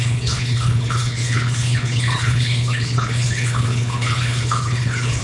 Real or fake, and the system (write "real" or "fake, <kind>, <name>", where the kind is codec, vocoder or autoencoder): fake, codec, HILCodec